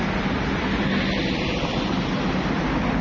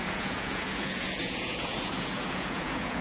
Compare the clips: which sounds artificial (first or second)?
second